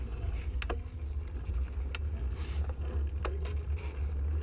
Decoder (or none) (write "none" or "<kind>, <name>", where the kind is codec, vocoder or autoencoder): none